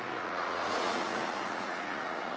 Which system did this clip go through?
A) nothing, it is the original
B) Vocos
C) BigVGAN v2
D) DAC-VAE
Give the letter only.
B